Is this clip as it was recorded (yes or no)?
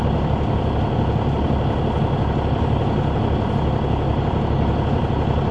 yes